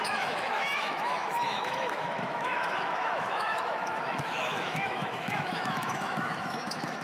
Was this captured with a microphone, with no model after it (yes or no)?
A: no